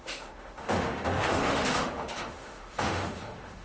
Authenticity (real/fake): fake